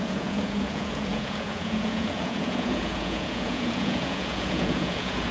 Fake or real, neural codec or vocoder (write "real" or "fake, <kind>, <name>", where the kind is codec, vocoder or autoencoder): fake, vocoder, Vocos